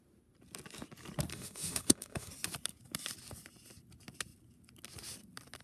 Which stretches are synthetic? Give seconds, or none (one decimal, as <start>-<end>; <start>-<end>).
1.3-2.3